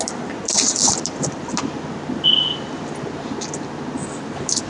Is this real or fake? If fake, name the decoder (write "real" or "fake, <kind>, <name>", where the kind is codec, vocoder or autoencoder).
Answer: real